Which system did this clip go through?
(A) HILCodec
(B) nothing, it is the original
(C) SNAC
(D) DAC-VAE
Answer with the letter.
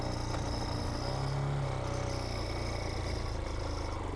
B